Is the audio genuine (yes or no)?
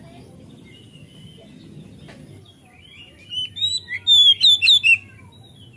yes